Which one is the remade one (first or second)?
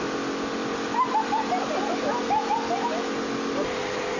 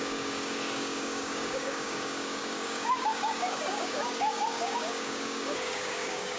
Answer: second